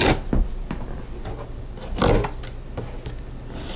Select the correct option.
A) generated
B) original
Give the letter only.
B